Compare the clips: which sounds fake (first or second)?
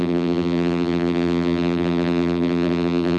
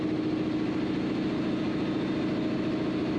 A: first